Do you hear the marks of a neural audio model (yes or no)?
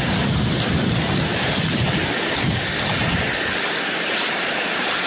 yes